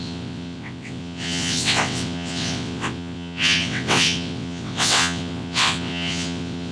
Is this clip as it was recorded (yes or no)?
no